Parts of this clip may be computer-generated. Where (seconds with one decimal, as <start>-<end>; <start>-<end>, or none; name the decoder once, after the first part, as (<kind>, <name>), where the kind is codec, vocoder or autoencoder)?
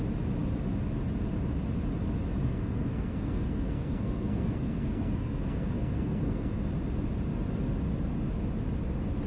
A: 2.4-6.6 (codec, SNAC)